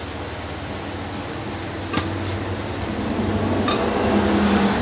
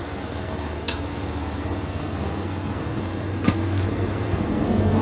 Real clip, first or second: first